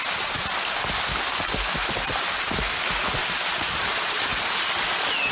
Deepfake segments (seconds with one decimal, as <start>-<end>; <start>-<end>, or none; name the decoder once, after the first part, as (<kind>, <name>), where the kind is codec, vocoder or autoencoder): none